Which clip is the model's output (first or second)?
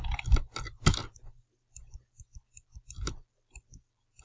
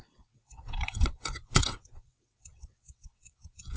second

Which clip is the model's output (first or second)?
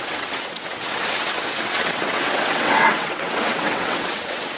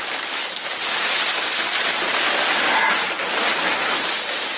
first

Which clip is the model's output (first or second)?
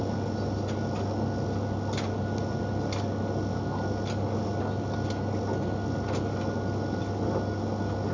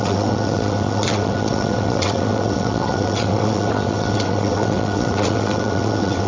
second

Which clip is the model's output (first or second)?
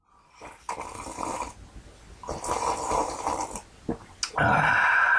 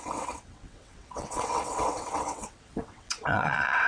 second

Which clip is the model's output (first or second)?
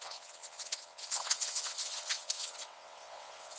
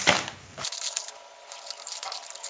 first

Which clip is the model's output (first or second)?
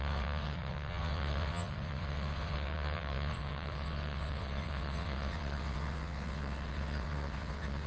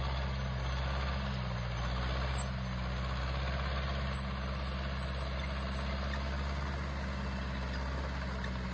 first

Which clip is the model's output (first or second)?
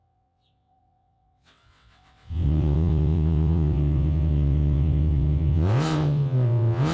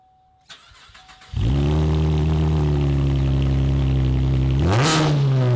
first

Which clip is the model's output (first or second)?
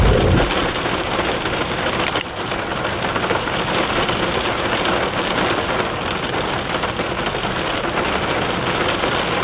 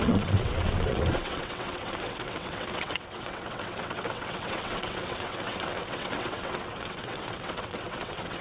second